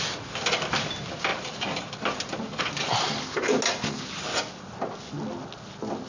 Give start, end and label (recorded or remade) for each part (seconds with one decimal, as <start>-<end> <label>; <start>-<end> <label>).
0.0-1.3 recorded; 1.3-2.6 remade; 2.6-6.1 recorded